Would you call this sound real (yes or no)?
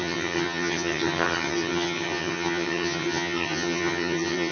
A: no